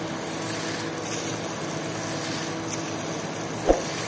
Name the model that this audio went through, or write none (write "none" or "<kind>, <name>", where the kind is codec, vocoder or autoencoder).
none